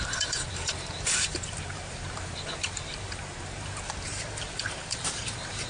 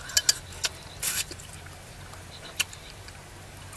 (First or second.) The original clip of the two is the second